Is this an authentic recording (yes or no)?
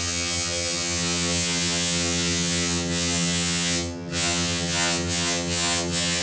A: no